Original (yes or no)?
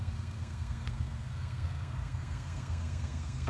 no